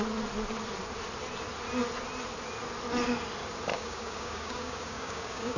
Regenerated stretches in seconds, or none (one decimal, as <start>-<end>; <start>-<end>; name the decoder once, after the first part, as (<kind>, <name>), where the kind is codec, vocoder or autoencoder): 3.7-5.6 (codec, DAC)